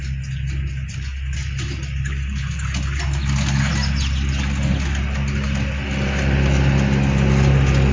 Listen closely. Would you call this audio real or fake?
real